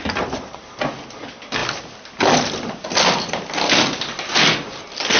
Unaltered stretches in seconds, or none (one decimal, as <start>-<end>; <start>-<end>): 0.0-5.2